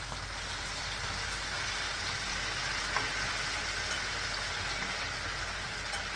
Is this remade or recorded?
recorded